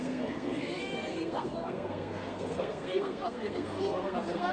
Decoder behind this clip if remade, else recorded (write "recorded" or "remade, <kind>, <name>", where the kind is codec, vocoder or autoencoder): remade, codec, SNAC